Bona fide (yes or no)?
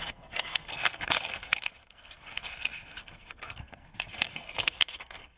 no